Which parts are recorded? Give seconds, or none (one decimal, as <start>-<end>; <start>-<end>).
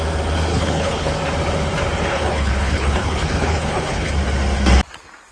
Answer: 0.0-0.5; 1.1-2.1; 4.1-5.3